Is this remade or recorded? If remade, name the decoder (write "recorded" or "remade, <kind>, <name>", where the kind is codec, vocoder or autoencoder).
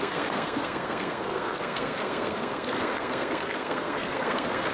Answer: remade, codec, SNAC